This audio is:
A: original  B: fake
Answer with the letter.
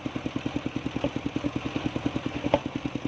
A